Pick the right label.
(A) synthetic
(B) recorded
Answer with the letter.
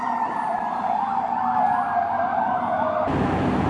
B